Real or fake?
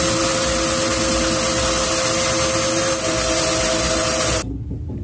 real